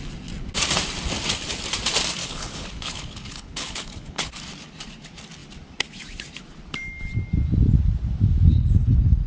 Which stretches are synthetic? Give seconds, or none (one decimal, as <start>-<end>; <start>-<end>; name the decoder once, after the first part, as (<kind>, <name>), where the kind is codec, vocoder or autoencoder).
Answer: 2.2-4.3 (codec, HILCodec); 8.5-9.3